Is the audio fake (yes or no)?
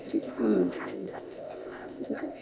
yes